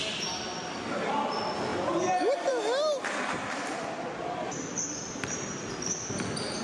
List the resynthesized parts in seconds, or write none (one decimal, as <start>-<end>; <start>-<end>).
1.7-5.7